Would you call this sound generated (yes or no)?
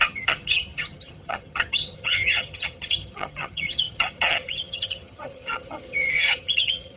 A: yes